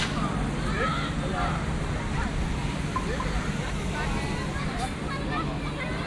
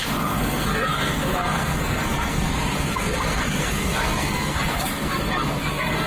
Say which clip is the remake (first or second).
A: second